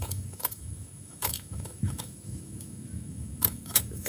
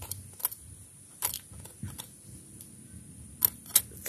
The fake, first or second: first